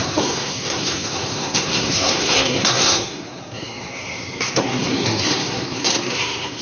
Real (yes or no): no